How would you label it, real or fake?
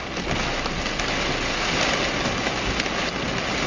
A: real